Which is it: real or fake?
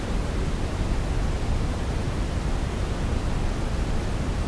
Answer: real